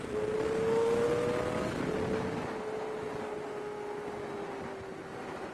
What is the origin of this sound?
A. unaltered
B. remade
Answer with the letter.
A